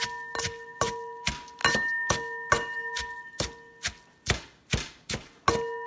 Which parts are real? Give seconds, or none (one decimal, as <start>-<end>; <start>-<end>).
0.0-5.9